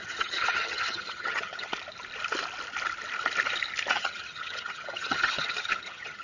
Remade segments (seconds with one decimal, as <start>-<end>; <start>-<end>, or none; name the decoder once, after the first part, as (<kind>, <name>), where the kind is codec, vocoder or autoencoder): 0.0-1.7 (vocoder, HiFi-GAN); 3.9-6.2